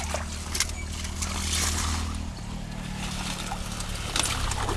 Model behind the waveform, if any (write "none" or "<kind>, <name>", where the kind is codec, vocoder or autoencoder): none